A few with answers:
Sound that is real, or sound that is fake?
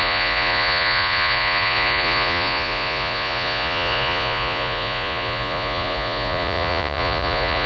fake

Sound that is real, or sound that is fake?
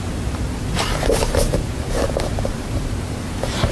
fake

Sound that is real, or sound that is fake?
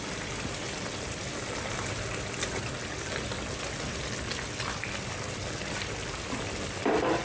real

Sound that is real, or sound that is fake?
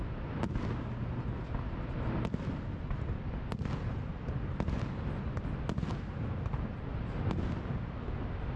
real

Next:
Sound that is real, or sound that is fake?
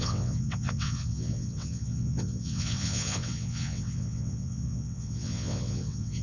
fake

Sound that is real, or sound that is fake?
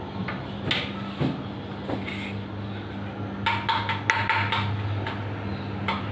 real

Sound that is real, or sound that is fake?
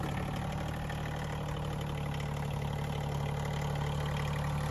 real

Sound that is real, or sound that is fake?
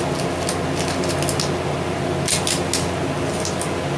real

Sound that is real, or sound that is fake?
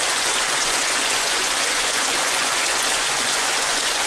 fake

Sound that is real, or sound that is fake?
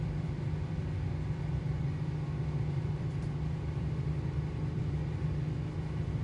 fake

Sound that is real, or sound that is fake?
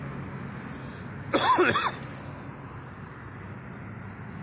real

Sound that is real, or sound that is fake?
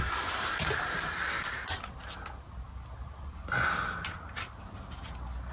real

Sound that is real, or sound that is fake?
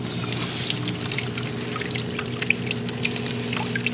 real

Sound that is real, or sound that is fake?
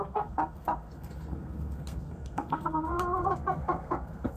fake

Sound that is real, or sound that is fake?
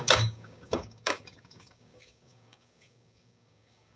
fake